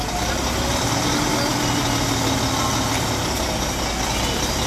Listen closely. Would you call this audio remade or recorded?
recorded